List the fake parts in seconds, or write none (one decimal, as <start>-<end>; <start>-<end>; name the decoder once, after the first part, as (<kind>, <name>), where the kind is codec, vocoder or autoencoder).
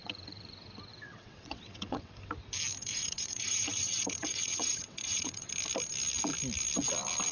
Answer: 0.0-0.5 (vocoder, WaveNeXt); 0.9-2.1; 2.8-5.5